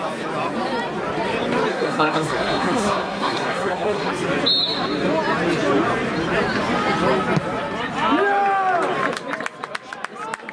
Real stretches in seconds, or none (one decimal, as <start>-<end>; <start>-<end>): 0.0-1.7; 4.1-10.5